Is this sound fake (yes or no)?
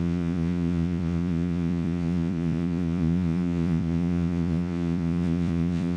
yes